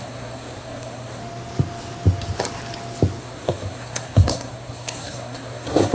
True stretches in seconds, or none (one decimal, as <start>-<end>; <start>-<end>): 1.2-3.2